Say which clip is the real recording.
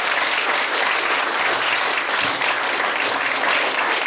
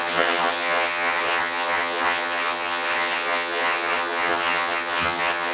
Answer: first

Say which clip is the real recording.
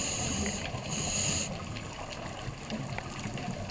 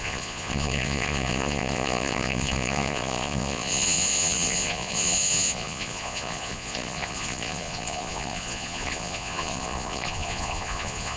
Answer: first